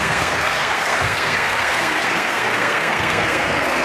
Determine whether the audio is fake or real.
fake